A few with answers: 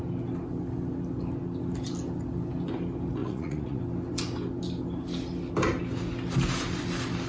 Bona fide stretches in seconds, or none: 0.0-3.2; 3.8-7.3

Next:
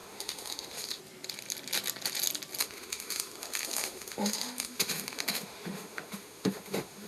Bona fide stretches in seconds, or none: 1.0-2.6